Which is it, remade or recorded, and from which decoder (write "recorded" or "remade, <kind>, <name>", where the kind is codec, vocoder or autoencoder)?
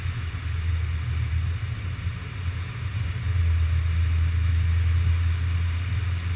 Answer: recorded